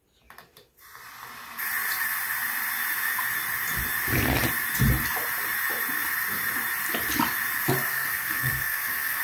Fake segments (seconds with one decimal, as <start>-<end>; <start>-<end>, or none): 7.9-9.2